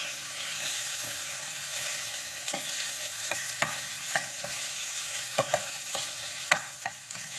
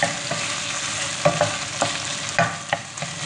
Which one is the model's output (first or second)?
first